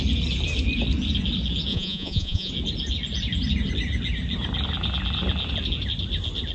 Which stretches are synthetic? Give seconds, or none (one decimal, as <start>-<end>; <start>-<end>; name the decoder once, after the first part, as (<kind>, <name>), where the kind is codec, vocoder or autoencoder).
1.7-2.5 (vocoder, Vocos)